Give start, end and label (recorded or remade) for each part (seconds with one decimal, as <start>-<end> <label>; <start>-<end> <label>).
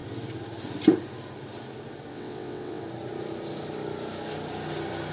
0.0-2.1 recorded; 2.1-2.8 remade; 2.8-5.1 recorded